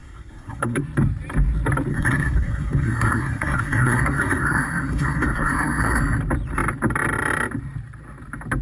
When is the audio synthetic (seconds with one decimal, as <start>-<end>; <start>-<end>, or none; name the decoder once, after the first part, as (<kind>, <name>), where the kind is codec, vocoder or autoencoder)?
0.0-0.8 (codec, SNAC); 1.9-6.0